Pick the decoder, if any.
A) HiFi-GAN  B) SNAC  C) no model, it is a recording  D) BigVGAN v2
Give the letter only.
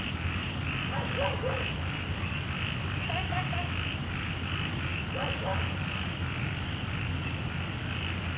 C